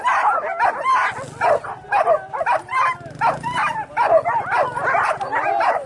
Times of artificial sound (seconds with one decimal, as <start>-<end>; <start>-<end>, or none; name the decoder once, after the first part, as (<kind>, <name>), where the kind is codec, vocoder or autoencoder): none